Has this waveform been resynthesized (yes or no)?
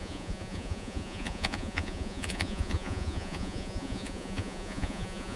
yes